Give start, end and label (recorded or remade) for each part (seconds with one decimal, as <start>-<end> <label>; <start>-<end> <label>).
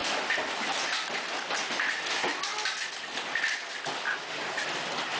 0.0-5.2 recorded